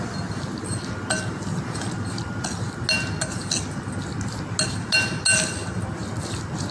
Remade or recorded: recorded